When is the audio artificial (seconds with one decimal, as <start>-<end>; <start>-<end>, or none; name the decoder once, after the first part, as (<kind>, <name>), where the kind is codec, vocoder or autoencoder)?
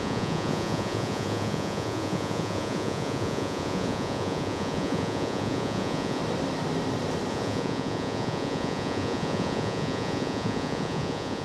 0.0-6.2 (vocoder, Vocos); 7.3-11.4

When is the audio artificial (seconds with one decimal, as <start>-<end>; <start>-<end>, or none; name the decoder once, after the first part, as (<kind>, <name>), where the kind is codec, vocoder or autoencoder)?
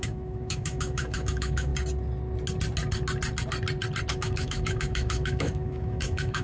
0.0-1.7 (autoencoder, DAC-VAE); 4.1-6.4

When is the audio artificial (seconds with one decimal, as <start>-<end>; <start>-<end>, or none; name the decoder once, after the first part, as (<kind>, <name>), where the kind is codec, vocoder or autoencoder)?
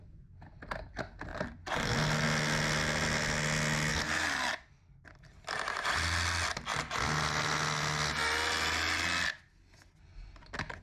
none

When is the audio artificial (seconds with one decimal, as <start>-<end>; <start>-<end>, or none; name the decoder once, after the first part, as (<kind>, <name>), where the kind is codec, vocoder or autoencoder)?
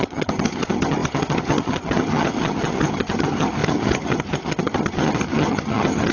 0.0-6.1 (vocoder, HiFi-GAN)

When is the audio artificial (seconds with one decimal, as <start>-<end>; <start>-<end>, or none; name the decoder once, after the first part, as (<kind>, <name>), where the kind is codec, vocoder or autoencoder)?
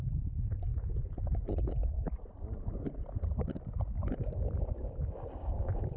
none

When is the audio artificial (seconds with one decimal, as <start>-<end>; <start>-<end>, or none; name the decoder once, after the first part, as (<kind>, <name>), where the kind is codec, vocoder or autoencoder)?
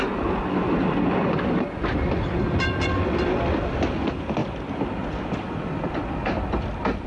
4.4-6.4 (vocoder, BigVGAN v2)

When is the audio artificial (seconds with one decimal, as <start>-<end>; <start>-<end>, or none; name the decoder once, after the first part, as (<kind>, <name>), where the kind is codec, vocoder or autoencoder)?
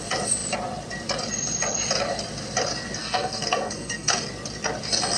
3.0-4.2 (codec, SNAC)